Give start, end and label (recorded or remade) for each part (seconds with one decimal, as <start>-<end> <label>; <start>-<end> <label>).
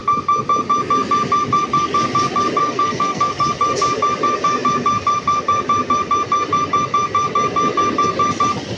0.0-2.6 recorded; 2.6-3.3 remade; 3.3-8.8 recorded